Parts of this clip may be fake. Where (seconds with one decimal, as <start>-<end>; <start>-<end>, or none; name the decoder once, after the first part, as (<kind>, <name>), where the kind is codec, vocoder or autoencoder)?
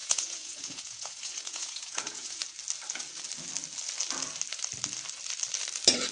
0.0-2.4 (vocoder, Vocos)